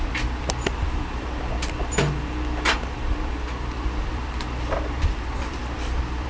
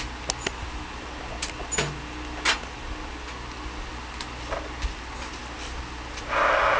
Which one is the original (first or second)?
second